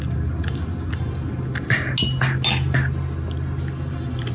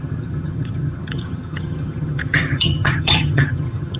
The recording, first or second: first